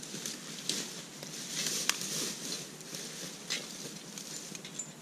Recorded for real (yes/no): yes